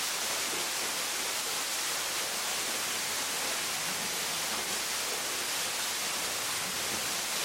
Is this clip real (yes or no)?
yes